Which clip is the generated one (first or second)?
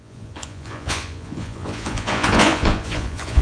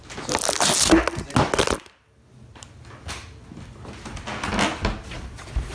first